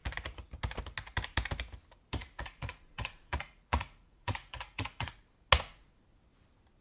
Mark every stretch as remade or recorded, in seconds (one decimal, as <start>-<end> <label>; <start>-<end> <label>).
0.0-2.2 recorded; 2.2-5.1 remade; 5.1-6.8 recorded